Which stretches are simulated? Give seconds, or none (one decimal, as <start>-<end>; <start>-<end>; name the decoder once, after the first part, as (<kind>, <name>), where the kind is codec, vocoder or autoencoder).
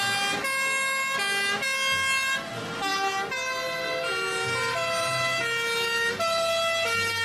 none